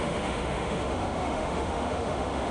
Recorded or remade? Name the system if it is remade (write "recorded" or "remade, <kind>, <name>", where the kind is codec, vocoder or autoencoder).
remade, autoencoder, DAC-VAE